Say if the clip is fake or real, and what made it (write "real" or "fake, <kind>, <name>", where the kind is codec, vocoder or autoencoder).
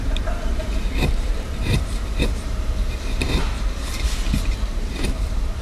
fake, vocoder, BigVGAN v2